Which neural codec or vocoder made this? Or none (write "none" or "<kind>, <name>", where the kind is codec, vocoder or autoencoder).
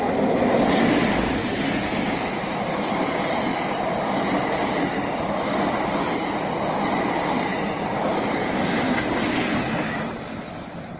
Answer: none